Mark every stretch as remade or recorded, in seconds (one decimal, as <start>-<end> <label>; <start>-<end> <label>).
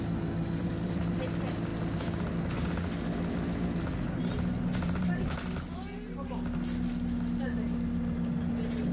0.0-8.9 recorded